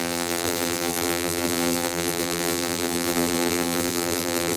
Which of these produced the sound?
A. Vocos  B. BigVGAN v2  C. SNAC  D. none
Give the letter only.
B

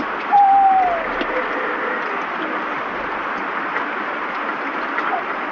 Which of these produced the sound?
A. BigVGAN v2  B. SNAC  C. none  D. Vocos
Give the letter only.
C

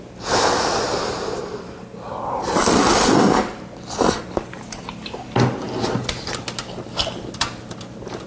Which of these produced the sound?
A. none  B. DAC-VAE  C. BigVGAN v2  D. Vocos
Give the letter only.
A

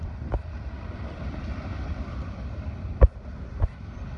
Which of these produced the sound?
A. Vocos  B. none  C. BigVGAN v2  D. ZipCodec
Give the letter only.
C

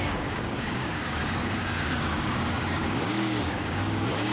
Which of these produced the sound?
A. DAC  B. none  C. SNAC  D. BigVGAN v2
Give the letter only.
A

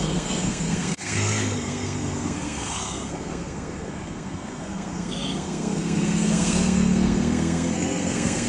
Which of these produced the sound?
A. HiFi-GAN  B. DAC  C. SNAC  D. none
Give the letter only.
C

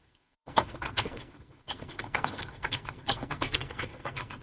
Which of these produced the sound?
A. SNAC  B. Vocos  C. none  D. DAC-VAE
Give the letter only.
A